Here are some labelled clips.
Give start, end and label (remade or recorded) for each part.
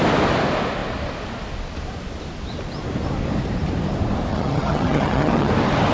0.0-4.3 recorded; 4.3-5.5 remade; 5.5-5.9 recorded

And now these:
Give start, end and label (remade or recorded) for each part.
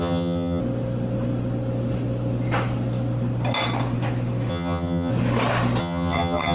0.0-0.6 remade; 0.6-4.5 recorded; 4.5-5.1 remade; 5.1-5.8 recorded; 5.8-6.5 remade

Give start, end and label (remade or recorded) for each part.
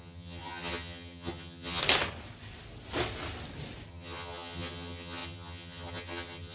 0.0-1.8 remade; 1.8-3.9 recorded; 3.9-6.5 remade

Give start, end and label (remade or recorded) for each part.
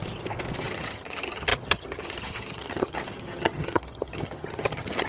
0.0-0.6 recorded; 0.6-5.1 remade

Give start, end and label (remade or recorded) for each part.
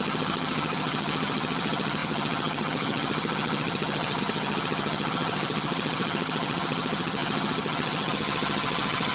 0.0-9.1 remade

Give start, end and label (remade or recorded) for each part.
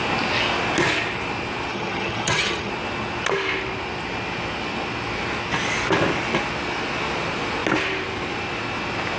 0.0-1.7 recorded; 1.7-2.7 remade; 2.7-9.2 recorded